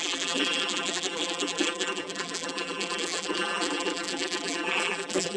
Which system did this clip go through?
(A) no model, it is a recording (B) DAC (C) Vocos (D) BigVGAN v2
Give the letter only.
D